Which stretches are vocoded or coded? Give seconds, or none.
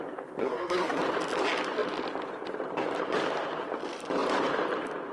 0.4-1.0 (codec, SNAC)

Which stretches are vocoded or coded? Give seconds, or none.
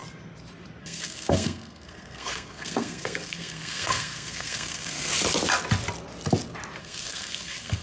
0.8-5.1 (codec, SNAC); 6.8-7.8